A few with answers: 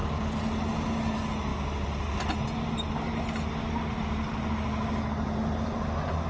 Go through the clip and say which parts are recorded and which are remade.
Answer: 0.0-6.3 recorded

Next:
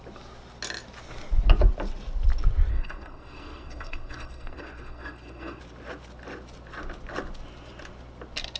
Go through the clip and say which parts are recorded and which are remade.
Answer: 0.0-2.7 recorded; 2.7-5.6 remade; 5.6-8.6 recorded

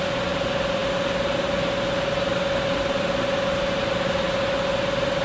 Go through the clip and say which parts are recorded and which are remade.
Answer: 0.0-5.2 recorded

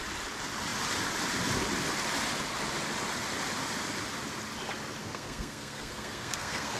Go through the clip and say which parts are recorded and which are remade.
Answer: 0.0-5.0 recorded; 5.0-6.8 remade

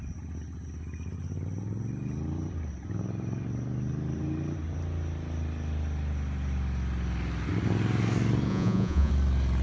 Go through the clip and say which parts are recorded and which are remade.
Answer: 0.0-8.5 recorded; 8.5-9.1 remade; 9.1-9.6 recorded

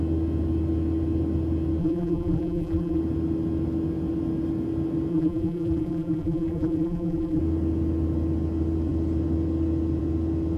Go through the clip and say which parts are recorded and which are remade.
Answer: 0.0-1.8 recorded; 1.8-3.0 remade; 3.0-5.1 recorded; 5.1-7.4 remade; 7.4-10.6 recorded